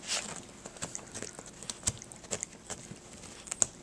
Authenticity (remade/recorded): recorded